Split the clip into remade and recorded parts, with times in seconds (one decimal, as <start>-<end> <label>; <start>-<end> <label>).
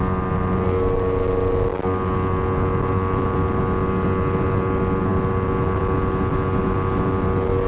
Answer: 0.0-7.7 recorded